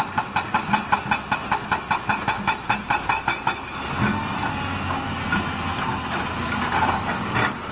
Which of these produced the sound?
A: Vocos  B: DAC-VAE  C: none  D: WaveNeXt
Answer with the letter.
C